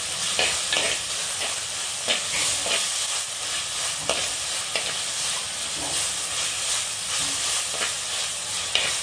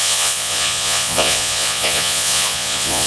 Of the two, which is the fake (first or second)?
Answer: second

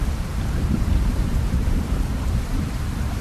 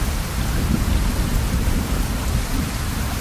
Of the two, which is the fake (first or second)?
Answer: first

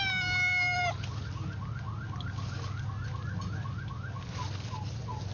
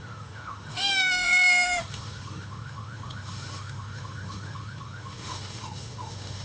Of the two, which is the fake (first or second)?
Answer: second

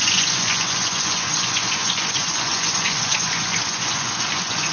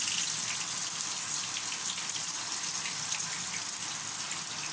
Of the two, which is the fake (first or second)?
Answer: first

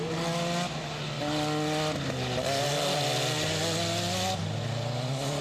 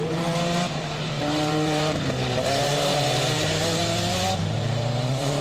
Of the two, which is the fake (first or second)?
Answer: second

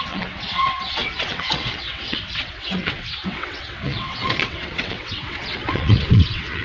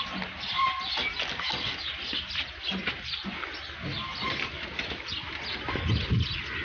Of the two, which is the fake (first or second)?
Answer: first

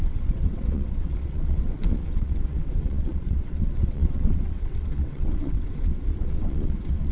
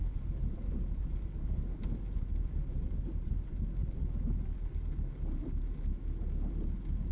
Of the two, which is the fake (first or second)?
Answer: first